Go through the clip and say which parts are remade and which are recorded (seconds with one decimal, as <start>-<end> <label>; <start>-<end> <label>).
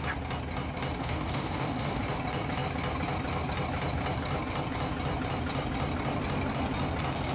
0.0-1.0 recorded; 1.0-2.0 remade; 2.0-7.3 recorded